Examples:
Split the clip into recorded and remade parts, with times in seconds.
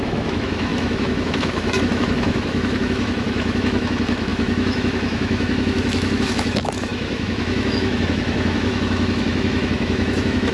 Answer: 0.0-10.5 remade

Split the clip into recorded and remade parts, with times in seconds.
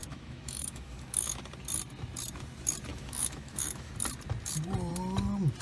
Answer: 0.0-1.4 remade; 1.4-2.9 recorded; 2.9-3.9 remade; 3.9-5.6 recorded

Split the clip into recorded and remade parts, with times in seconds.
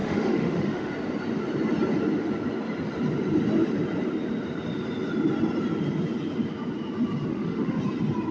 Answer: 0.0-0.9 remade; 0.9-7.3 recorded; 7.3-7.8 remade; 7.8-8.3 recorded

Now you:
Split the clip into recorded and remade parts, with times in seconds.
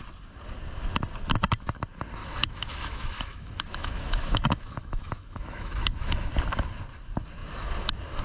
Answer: 0.0-2.2 recorded; 2.2-6.3 remade; 6.3-8.2 recorded